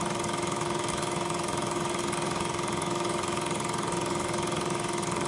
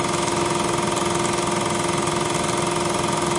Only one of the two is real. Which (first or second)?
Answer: second